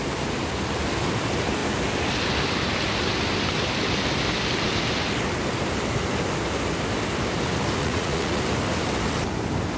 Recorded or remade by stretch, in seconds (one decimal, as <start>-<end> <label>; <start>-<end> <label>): 0.0-7.8 recorded; 7.8-8.4 remade; 8.4-9.8 recorded

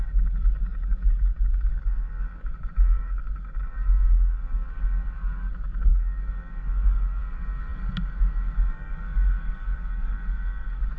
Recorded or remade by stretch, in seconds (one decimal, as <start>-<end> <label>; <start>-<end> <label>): 0.0-11.0 remade

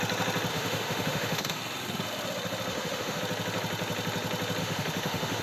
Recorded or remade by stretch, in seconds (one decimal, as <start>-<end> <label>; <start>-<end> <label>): 0.0-0.5 recorded; 0.5-1.6 remade; 1.6-2.7 recorded; 2.7-3.2 remade; 3.2-4.6 recorded; 4.6-5.4 remade

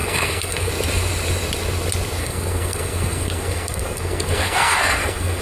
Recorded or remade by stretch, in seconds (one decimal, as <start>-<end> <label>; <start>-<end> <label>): 0.0-0.7 remade; 0.7-2.2 recorded; 2.2-5.4 remade

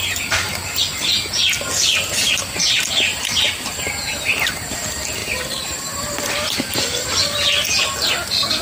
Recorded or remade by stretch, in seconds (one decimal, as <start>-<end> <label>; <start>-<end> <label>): 0.0-0.5 remade; 0.5-3.1 recorded; 3.1-4.7 remade; 4.7-5.2 recorded; 5.2-6.3 remade; 6.3-8.6 recorded

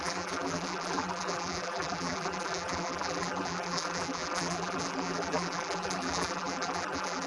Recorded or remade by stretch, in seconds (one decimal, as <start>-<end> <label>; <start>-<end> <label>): 0.0-7.3 remade

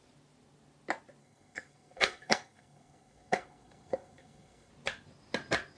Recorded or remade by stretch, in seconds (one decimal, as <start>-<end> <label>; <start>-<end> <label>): 0.0-1.2 recorded; 1.2-4.7 remade; 4.7-5.8 recorded

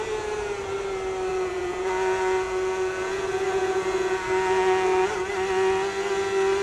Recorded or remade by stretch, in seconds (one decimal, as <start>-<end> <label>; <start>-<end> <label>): 0.0-1.3 recorded; 1.3-5.3 remade; 5.3-6.6 recorded